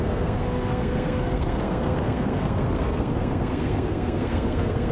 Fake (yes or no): yes